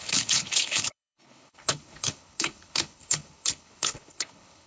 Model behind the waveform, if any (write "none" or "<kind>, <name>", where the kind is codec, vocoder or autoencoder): codec, HILCodec